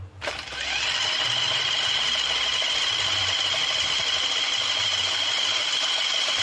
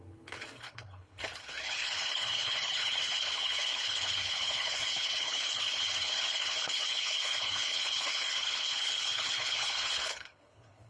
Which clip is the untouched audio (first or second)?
first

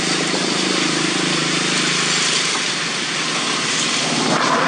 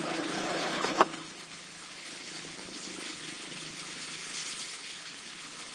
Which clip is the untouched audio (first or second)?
first